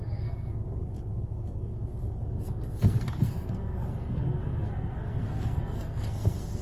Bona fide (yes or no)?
no